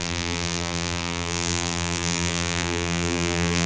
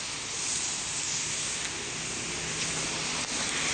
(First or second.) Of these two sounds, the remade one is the first